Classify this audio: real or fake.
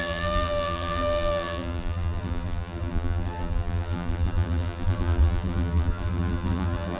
fake